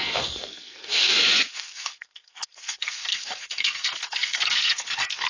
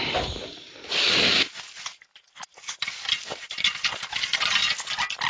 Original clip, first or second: second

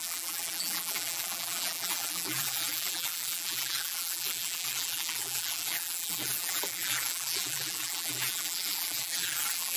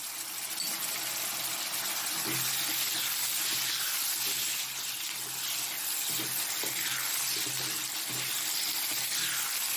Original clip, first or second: second